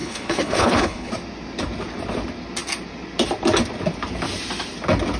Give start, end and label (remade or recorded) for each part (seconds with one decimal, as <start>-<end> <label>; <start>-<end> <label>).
0.0-1.1 remade; 1.1-5.2 recorded